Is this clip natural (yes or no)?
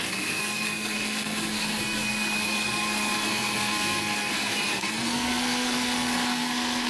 no